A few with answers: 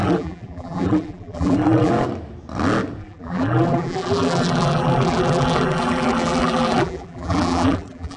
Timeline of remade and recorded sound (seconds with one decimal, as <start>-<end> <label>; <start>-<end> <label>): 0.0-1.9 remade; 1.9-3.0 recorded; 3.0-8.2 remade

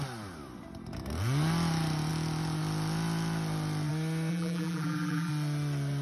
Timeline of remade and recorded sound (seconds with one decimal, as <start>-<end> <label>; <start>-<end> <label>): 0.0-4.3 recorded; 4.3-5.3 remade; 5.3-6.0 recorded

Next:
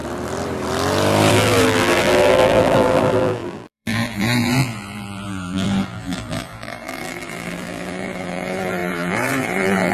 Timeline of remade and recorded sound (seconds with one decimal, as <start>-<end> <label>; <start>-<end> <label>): 0.0-1.3 recorded; 1.3-9.9 remade